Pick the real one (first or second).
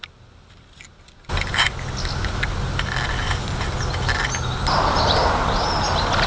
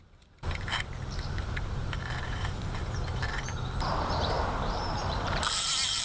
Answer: first